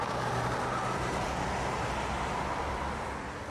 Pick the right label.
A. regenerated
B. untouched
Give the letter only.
B